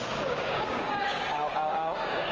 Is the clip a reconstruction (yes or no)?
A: yes